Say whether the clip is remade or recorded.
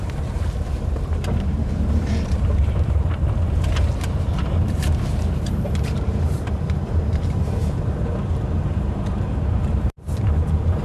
remade